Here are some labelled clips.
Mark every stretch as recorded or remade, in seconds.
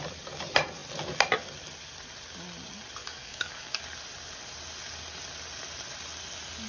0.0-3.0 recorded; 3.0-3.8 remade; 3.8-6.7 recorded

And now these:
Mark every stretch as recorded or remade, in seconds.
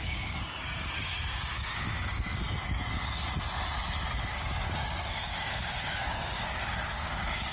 0.0-2.4 remade; 2.4-4.3 recorded; 4.3-7.5 remade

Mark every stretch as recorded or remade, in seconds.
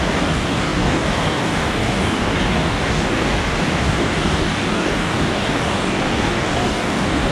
0.0-7.3 remade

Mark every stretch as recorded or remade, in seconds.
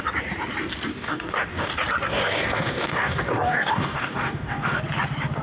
0.0-0.9 recorded; 0.9-1.7 remade; 1.7-2.1 recorded; 2.1-4.8 remade; 4.8-5.4 recorded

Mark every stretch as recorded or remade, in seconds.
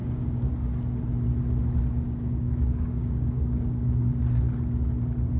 0.0-0.5 remade; 0.5-1.6 recorded; 1.6-4.2 remade; 4.2-5.4 recorded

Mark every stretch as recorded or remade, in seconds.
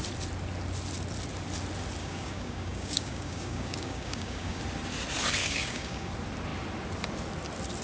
0.0-2.0 recorded; 2.0-4.6 remade; 4.6-5.4 recorded; 5.4-6.1 remade; 6.1-7.8 recorded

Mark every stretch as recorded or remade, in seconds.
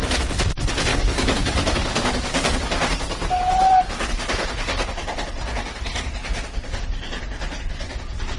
0.0-0.9 recorded; 0.9-2.6 remade; 2.6-8.4 recorded